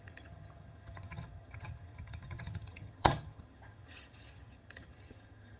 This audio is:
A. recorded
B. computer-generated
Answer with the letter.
B